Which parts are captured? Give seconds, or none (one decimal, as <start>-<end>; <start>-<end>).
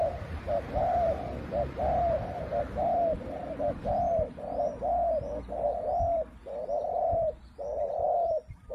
3.4-4.1